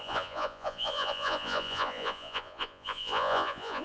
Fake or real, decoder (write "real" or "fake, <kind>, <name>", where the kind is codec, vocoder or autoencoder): fake, vocoder, Vocos